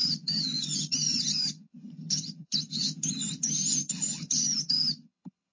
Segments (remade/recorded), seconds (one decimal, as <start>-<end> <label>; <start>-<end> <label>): 0.0-5.5 remade